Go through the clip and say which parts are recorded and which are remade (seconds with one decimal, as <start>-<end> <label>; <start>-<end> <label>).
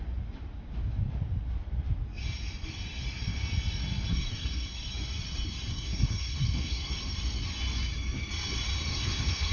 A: 0.0-4.1 recorded; 4.1-4.7 remade; 4.7-5.7 recorded; 5.7-6.9 remade; 6.9-8.9 recorded; 8.9-9.5 remade